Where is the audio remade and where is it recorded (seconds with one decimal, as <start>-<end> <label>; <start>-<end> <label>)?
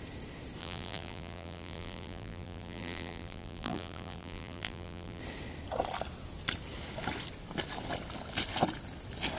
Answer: 0.0-0.6 recorded; 0.6-5.2 remade; 5.2-9.4 recorded